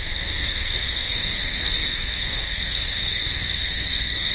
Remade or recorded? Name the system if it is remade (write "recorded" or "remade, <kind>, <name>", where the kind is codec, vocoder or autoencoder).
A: remade, codec, SNAC